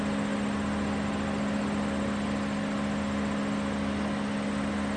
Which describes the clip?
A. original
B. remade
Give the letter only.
A